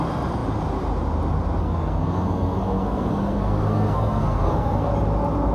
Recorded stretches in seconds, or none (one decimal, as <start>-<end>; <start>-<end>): 0.0-1.6; 4.9-5.5